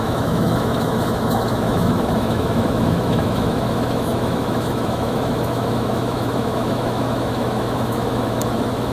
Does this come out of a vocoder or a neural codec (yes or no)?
yes